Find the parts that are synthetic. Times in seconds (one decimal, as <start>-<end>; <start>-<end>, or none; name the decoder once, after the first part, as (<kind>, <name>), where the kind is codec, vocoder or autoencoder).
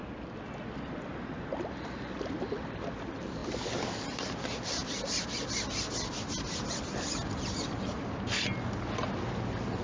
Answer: 0.0-0.5 (vocoder, BigVGAN v2)